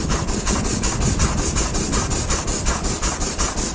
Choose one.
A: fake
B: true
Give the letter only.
B